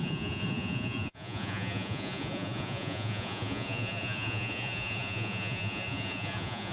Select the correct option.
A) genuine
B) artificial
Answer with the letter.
B